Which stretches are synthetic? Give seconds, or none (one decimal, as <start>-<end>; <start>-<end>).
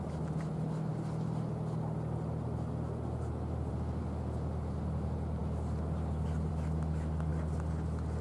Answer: none